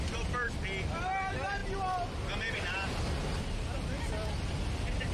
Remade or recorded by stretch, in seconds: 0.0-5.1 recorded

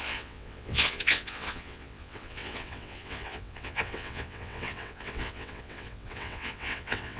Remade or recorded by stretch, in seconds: 0.0-7.2 remade

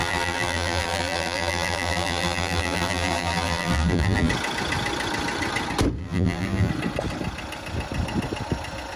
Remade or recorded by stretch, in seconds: 0.0-4.3 remade; 4.3-6.0 recorded; 6.0-6.7 remade; 6.7-9.0 recorded